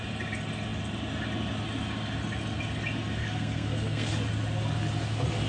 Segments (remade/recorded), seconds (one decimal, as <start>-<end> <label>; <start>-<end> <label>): 0.0-3.2 recorded; 3.2-4.1 remade; 4.1-5.5 recorded